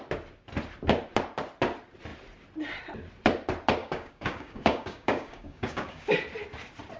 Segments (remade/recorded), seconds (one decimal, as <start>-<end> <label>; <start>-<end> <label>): 0.0-3.8 recorded; 3.8-6.1 remade; 6.1-7.0 recorded